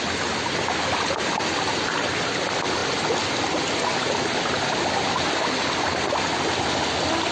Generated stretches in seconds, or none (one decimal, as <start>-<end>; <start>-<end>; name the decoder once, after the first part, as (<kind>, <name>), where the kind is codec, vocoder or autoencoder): none